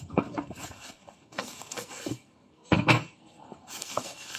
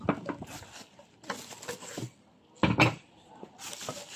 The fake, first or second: first